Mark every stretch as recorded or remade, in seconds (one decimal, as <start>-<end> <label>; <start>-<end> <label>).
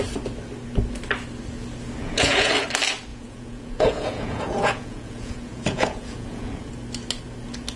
0.0-2.0 recorded; 2.0-2.5 remade; 2.5-3.1 recorded; 3.1-6.7 remade; 6.7-7.8 recorded